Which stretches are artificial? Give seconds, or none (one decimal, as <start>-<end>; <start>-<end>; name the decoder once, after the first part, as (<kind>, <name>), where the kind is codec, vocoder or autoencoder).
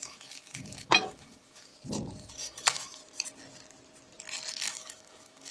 0.0-1.7 (autoencoder, DAC-VAE); 2.3-3.0; 4.5-5.5